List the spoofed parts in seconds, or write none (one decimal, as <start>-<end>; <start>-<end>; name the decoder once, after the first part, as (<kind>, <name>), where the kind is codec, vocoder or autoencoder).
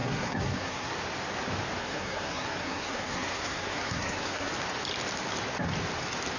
0.0-0.9 (codec, SNAC); 1.8-4.5